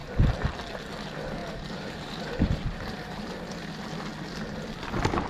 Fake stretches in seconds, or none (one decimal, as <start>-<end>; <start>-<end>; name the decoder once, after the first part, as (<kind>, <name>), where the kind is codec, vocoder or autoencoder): 1.4-3.4 (vocoder, BigVGAN v2)